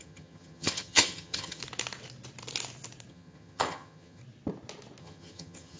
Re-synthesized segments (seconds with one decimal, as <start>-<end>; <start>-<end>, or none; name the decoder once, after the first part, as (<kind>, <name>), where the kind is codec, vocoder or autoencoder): 0.0-1.6 (vocoder, HiFi-GAN); 3.1-4.2; 5.0-5.8